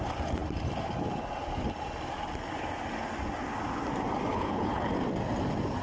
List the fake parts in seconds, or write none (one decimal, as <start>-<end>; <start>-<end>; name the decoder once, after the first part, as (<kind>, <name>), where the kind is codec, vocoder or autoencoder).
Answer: 4.3-4.9 (codec, HILCodec)